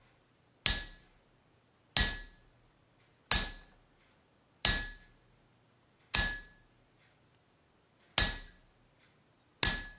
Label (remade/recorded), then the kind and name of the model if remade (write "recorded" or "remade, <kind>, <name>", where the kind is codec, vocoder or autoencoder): recorded